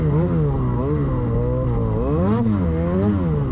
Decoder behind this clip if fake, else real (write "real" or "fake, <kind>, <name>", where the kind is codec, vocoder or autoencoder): real